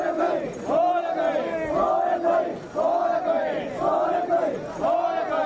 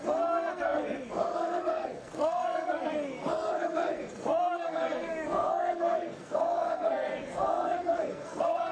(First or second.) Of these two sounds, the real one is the first